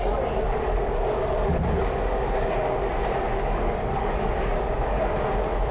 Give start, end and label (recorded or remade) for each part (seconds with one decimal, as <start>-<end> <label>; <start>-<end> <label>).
0.0-5.7 remade